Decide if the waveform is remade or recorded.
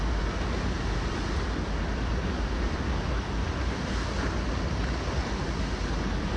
recorded